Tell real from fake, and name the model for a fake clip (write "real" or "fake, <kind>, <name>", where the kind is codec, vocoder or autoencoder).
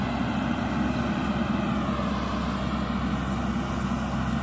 real